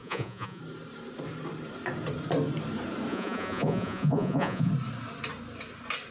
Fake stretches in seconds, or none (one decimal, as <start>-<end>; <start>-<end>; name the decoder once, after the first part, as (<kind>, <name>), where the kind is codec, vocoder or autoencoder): 0.0-0.6 (vocoder, Vocos); 3.1-4.7